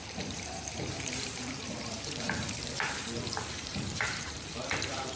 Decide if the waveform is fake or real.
fake